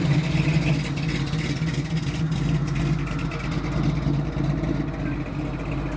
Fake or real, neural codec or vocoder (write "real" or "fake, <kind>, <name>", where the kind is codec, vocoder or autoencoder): real